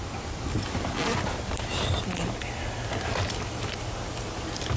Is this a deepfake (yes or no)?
no